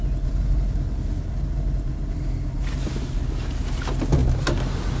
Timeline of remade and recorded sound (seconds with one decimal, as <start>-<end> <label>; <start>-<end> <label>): 0.0-5.0 recorded